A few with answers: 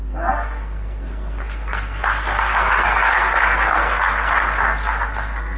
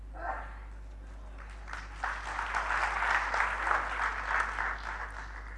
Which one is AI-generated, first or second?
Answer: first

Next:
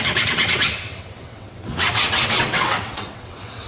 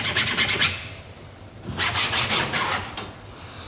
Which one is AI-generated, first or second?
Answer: first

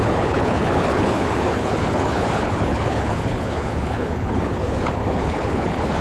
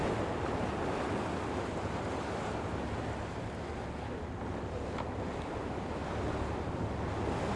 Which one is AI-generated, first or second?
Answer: first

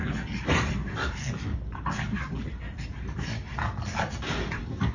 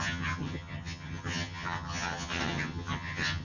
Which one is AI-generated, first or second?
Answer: second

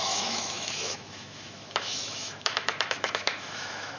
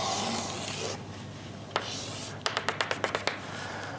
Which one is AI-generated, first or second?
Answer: first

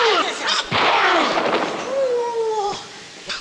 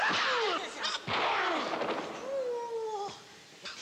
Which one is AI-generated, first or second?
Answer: first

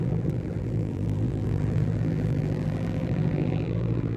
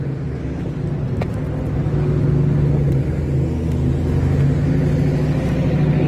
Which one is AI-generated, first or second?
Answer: first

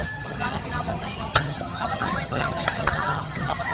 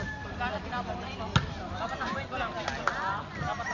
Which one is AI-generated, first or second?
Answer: first